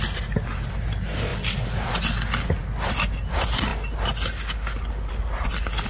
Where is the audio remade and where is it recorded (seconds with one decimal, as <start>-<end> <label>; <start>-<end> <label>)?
0.0-5.9 recorded